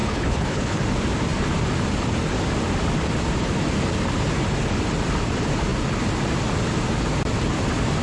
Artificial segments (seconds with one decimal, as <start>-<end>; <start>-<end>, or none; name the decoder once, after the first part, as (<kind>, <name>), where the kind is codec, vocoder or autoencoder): 0.0-0.8 (codec, HILCodec)